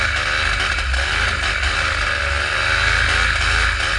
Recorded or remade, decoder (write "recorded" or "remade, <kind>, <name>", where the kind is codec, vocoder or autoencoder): recorded